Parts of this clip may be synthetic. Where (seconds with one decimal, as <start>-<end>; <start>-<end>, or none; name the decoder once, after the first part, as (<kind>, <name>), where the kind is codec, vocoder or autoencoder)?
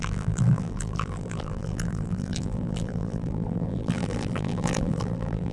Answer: 0.0-5.5 (vocoder, BigVGAN v2)